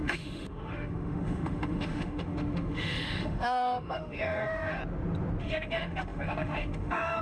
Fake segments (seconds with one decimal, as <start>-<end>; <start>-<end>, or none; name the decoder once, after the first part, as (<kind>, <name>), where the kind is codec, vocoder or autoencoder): 0.0-4.8 (autoencoder, DAC-VAE); 5.4-7.2